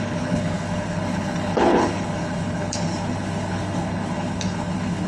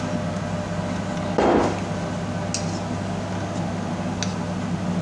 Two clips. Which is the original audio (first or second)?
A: second